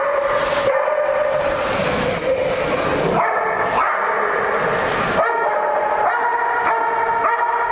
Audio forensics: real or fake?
real